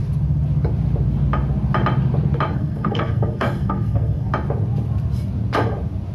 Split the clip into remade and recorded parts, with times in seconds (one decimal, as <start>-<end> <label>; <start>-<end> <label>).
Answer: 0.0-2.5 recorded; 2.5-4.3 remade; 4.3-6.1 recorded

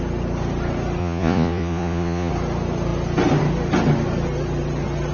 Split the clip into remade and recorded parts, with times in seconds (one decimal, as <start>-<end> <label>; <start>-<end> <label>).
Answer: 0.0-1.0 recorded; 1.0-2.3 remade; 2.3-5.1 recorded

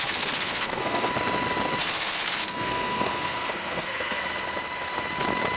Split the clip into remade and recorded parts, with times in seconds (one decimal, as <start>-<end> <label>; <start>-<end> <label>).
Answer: 0.0-1.1 remade; 1.1-1.8 recorded; 1.8-4.2 remade; 4.2-5.6 recorded

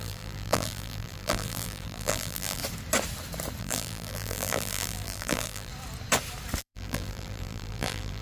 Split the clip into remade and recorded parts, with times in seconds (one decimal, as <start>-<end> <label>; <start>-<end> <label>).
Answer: 0.0-2.6 remade; 2.6-3.6 recorded; 3.6-5.7 remade; 5.7-6.6 recorded; 6.6-8.2 remade